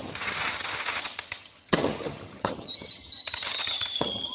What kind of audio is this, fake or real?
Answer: fake